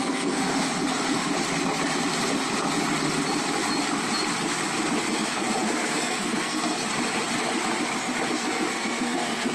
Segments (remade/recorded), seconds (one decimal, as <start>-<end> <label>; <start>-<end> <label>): 0.0-0.5 remade; 0.5-5.1 recorded; 5.1-6.8 remade; 6.8-8.3 recorded; 8.3-9.5 remade